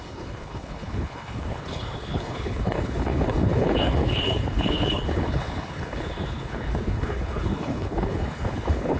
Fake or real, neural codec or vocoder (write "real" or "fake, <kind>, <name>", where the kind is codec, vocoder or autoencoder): fake, codec, HILCodec